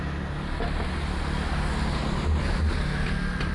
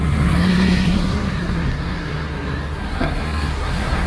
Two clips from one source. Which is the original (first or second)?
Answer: first